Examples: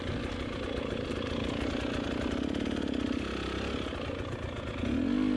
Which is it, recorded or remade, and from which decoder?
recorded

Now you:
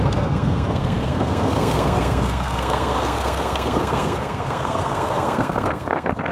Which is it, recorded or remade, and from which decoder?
remade, codec, SNAC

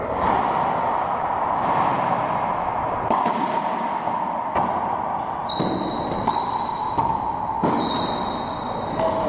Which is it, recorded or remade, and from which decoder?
recorded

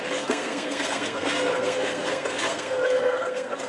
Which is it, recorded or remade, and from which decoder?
remade, codec, SNAC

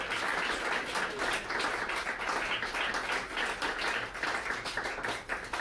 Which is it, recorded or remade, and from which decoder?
recorded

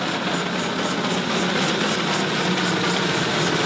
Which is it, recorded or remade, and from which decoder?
recorded